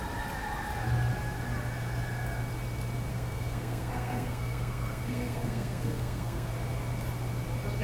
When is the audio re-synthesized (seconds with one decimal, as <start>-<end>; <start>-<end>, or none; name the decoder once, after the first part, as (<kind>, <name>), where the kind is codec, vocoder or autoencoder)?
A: 3.1-6.5 (codec, SNAC)